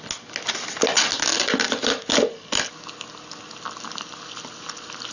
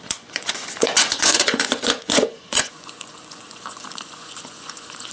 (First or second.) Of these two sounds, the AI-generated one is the second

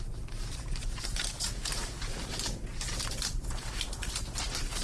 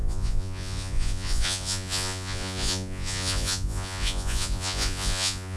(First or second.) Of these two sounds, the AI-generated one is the second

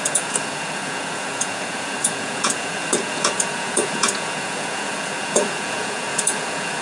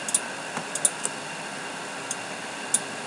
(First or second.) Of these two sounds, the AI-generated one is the first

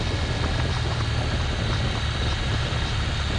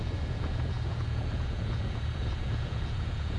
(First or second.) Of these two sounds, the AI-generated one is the second